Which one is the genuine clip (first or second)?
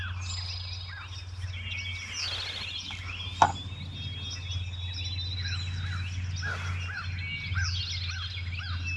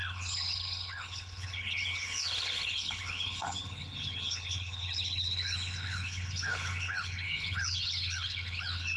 first